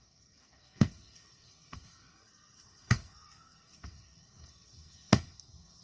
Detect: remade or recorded remade